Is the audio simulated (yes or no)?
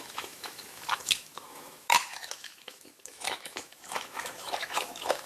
yes